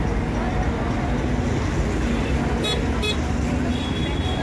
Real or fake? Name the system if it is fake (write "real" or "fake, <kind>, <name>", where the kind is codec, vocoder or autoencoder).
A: real